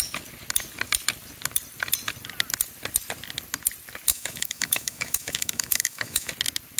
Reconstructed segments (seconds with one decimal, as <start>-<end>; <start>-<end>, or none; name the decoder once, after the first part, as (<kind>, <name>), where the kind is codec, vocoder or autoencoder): 4.1-6.3 (autoencoder, DAC-VAE)